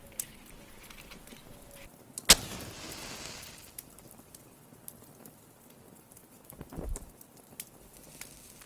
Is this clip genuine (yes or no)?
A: yes